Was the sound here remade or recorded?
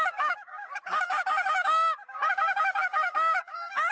remade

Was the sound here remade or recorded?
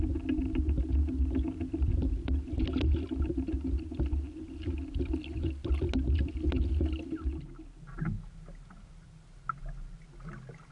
recorded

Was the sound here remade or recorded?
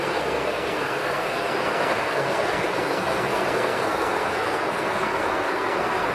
remade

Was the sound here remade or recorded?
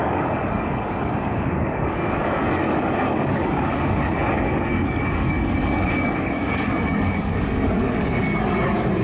remade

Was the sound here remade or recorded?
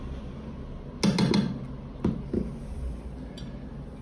recorded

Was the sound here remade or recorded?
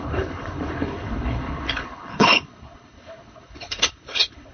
remade